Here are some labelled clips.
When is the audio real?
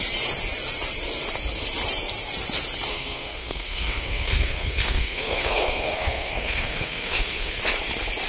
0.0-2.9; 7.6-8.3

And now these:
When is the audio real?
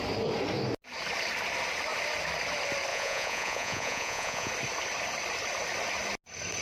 0.0-2.9; 4.5-6.6